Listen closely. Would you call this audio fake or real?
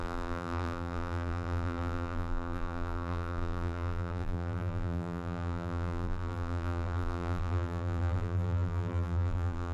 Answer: fake